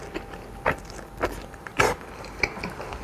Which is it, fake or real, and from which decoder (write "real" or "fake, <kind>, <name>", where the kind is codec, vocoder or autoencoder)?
real